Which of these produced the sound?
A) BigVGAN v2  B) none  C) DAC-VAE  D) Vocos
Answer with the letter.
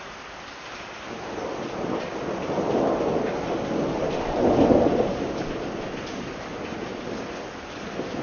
B